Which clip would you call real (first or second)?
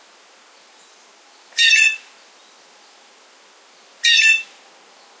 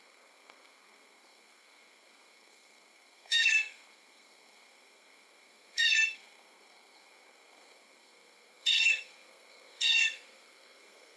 first